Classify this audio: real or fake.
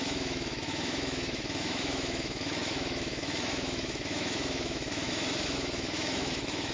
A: fake